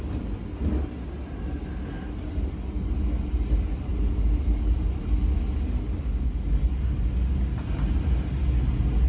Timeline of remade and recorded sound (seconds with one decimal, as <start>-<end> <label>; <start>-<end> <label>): 0.0-9.1 recorded